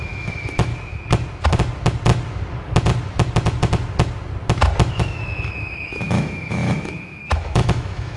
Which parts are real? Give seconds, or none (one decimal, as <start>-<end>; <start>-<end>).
0.7-4.9